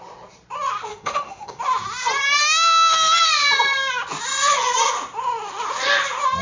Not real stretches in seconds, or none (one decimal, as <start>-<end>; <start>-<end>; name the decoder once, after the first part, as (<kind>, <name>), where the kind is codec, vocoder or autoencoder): 0.9-1.6 (autoencoder, DAC-VAE); 2.4-3.3